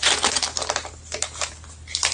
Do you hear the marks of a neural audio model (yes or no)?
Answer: no